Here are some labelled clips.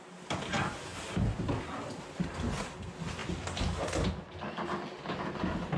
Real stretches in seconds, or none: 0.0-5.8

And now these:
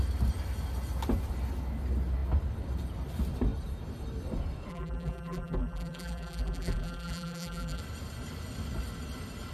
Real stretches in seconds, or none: 0.0-4.7; 7.8-9.5